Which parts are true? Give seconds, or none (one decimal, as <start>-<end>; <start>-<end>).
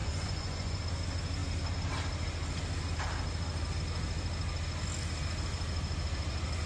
0.8-6.7